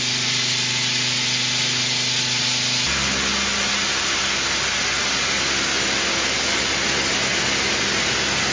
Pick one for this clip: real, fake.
real